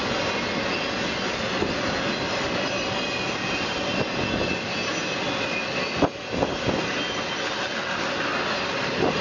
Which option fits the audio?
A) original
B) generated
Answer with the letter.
A